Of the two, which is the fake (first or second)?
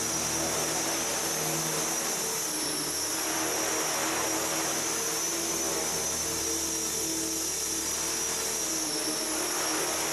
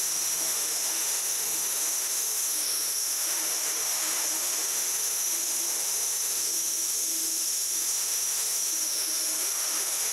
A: second